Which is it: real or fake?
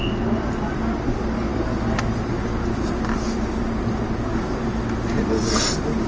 real